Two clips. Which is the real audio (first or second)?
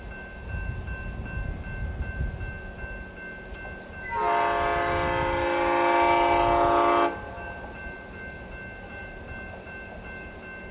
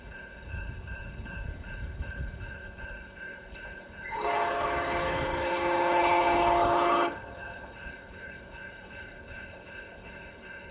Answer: first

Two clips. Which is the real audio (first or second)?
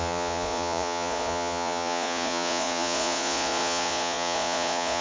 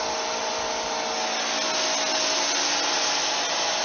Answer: second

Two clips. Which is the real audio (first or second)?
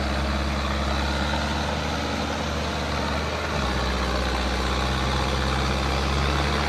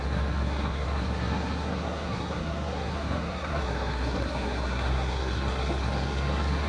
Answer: first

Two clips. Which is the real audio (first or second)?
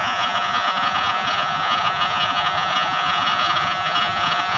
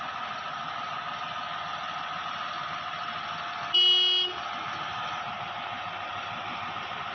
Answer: second